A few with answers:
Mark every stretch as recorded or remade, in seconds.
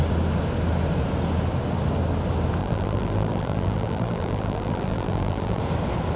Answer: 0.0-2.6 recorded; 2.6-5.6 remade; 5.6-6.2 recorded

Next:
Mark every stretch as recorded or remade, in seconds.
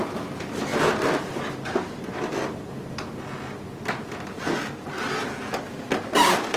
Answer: 0.0-6.6 recorded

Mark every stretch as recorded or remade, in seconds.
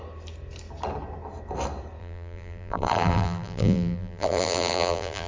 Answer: 0.0-2.0 recorded; 2.0-5.3 remade